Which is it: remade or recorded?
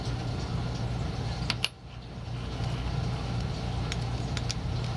recorded